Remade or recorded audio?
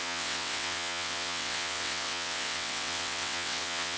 remade